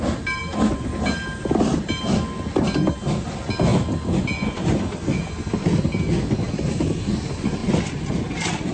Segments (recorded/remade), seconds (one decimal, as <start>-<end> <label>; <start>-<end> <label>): 0.0-8.7 recorded